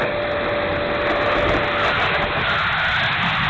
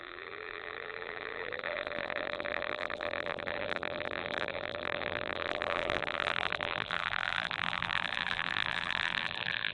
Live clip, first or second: first